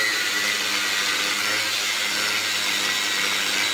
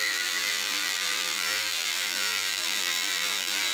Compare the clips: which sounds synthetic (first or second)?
second